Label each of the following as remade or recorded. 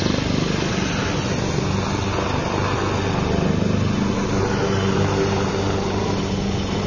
recorded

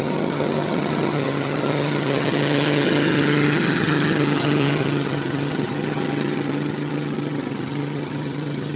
remade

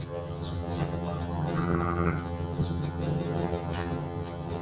remade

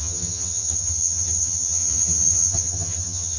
remade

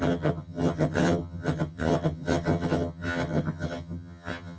remade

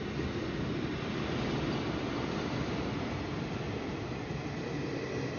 recorded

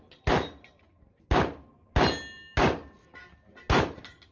recorded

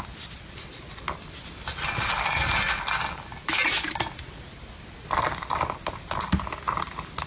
recorded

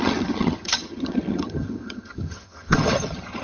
remade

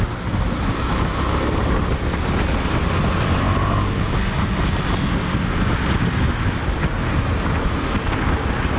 recorded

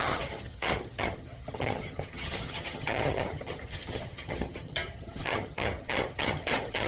remade